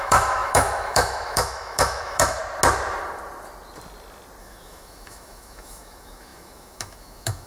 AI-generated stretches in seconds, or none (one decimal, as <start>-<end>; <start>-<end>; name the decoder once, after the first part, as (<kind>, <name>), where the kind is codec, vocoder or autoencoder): 0.0-2.4 (autoencoder, DAC-VAE); 4.4-7.5

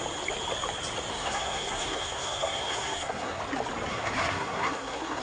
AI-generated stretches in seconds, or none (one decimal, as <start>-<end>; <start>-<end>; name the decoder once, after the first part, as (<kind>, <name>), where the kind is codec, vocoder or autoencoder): 1.1-3.4 (codec, SNAC); 3.9-5.2

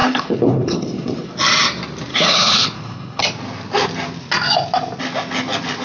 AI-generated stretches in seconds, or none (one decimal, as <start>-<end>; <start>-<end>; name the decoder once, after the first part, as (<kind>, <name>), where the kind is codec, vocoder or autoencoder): 0.0-1.3 (codec, HILCodec); 2.1-3.2

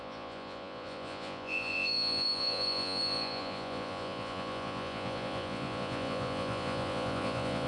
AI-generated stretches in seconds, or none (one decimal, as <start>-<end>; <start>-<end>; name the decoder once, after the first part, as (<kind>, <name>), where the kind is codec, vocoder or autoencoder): 0.0-7.7 (vocoder, Vocos)